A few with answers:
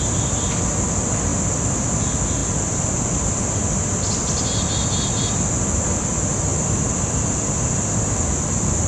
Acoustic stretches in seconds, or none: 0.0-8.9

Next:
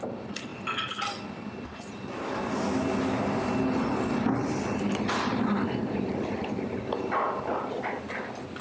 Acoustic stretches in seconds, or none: 0.0-8.6